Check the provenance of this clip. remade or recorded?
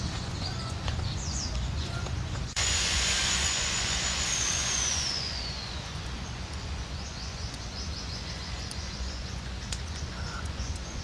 remade